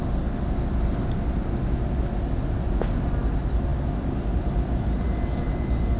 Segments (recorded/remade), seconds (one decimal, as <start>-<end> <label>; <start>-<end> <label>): 0.0-6.0 recorded